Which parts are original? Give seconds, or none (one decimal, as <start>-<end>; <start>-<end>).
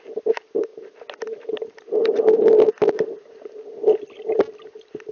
0.0-5.1